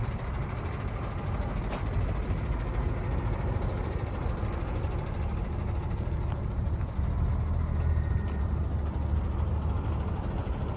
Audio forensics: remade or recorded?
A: recorded